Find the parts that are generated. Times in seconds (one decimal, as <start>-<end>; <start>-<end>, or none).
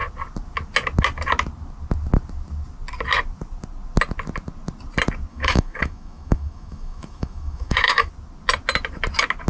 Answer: 5.3-8.1